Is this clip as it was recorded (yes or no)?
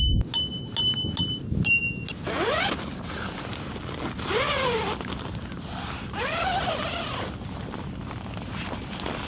yes